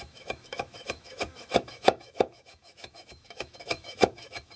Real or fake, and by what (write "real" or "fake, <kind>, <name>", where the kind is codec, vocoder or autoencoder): fake, autoencoder, DAC-VAE